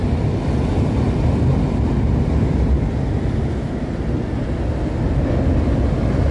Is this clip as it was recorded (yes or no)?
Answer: yes